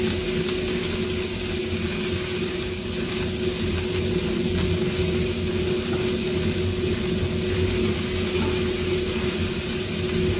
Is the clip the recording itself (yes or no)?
yes